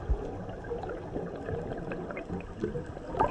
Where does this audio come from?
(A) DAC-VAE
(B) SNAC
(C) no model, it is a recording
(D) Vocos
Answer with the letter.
C